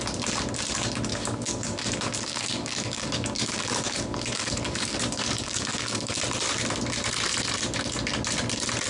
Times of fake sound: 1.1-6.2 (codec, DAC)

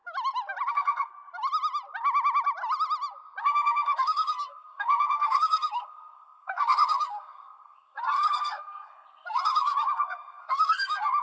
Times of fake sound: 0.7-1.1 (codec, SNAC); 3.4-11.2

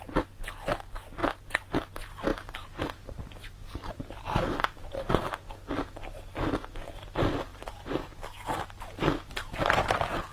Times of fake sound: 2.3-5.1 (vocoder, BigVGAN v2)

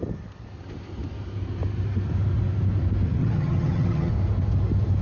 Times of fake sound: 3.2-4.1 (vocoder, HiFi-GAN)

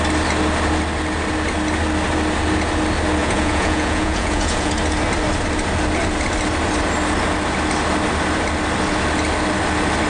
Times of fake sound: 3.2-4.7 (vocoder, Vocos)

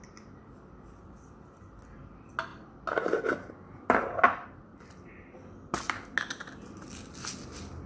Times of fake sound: none